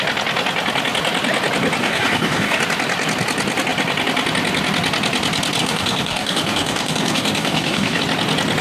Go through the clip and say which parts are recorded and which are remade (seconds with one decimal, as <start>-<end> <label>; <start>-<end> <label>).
0.0-1.8 recorded; 1.8-2.6 remade; 2.6-5.6 recorded; 5.6-8.0 remade; 8.0-8.6 recorded